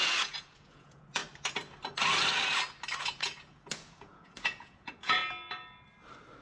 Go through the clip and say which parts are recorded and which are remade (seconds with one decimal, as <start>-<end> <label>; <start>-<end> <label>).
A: 0.0-1.2 remade; 1.2-3.0 recorded; 3.0-5.2 remade; 5.2-6.4 recorded